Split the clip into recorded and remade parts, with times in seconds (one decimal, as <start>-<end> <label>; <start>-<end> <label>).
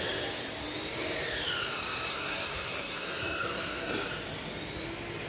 0.0-2.1 recorded; 2.1-4.1 remade; 4.1-5.3 recorded